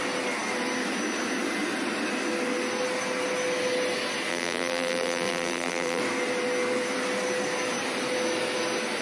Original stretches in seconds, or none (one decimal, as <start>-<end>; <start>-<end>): 0.0-4.3; 6.0-9.0